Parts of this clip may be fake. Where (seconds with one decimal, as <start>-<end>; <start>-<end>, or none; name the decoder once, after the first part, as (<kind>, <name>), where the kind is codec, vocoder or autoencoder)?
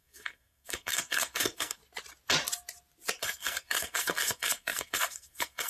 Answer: 0.0-1.8 (codec, SNAC); 3.2-5.7